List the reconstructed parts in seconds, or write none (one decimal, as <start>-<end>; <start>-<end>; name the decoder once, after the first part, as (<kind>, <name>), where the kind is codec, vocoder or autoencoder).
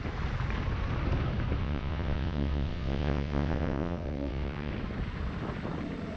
1.6-4.7 (vocoder, WaveNeXt)